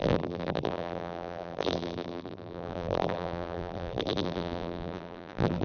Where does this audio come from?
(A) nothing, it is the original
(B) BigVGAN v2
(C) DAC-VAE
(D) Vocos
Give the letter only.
B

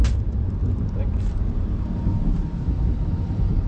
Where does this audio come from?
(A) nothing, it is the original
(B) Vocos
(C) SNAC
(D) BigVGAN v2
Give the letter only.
D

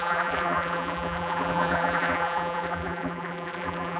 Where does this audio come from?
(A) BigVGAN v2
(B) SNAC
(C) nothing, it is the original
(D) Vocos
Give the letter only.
A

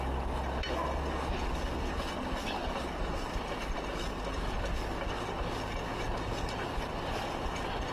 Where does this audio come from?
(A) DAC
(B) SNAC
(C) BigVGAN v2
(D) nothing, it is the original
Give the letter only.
D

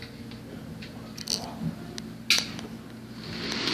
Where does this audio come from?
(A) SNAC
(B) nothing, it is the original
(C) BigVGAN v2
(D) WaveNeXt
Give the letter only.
B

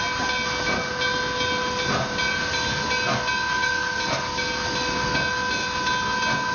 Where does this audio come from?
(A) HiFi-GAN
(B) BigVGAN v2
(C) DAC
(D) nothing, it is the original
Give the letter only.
D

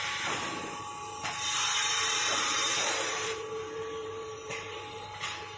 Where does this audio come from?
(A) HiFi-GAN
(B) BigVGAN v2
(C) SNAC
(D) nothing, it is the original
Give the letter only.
B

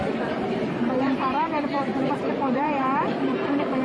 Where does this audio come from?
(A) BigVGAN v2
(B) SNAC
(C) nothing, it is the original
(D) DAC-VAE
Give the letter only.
A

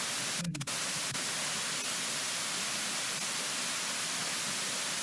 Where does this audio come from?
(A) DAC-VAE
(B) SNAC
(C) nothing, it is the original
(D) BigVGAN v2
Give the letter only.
C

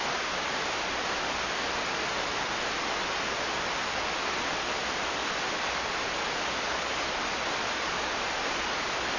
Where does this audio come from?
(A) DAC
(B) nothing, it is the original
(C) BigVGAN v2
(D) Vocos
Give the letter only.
B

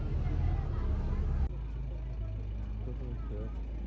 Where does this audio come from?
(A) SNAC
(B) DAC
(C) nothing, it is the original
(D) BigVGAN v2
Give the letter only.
C